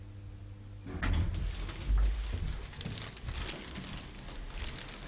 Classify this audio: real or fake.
real